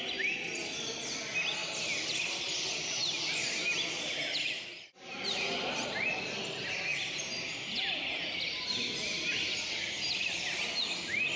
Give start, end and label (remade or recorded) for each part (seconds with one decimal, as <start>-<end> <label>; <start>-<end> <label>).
0.0-11.4 recorded